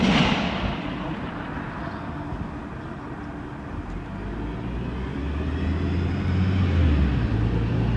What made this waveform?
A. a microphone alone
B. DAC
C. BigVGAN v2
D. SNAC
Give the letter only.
A